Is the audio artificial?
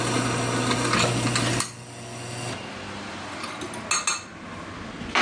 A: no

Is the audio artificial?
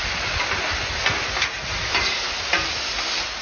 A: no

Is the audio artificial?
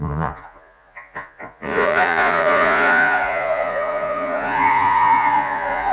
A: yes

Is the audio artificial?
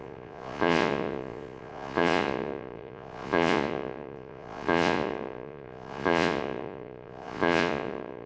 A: yes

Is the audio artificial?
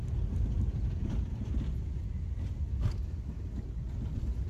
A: no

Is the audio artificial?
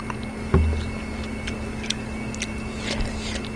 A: no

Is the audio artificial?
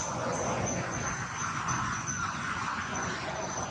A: yes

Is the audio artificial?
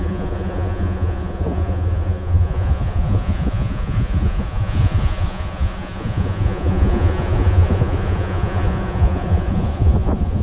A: yes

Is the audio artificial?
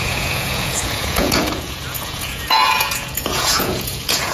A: yes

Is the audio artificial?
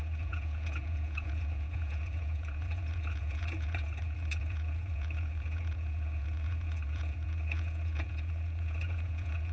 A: yes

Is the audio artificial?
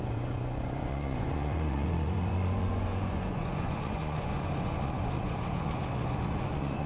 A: yes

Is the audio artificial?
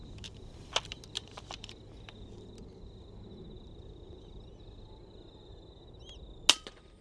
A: no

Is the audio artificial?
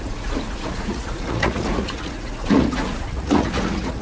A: yes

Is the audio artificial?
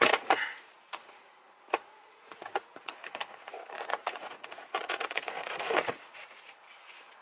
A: yes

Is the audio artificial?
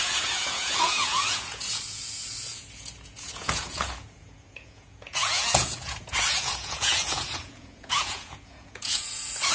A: yes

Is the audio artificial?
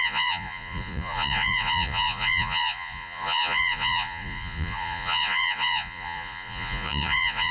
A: yes